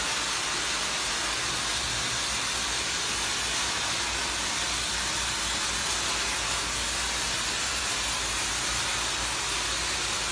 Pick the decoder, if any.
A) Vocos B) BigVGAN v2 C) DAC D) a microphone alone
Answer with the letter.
D